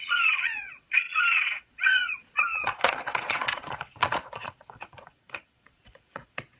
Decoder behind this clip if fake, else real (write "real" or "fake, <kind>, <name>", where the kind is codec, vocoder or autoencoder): fake, vocoder, Vocos